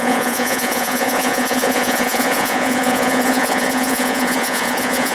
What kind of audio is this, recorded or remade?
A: remade